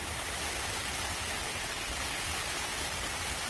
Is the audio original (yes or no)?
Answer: no